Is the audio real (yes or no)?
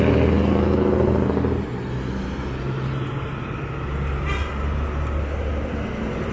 yes